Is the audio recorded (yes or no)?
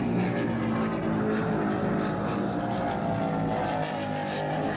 yes